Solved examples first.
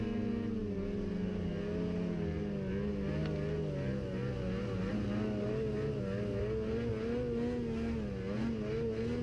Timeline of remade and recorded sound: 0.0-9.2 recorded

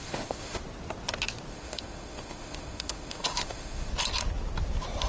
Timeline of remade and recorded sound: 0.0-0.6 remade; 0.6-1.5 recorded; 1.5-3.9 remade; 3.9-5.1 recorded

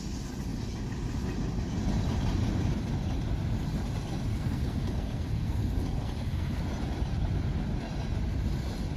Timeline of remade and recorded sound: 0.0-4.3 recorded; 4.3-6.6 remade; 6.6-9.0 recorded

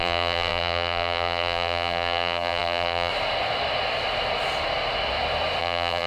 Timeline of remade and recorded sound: 0.0-3.1 remade; 3.1-5.6 recorded; 5.6-6.1 remade